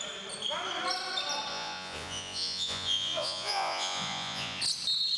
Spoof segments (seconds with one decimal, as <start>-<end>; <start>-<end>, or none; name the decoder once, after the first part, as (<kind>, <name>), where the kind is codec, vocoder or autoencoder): 1.5-4.6 (vocoder, Vocos)